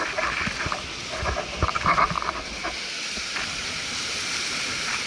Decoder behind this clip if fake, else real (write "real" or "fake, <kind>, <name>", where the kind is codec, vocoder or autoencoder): real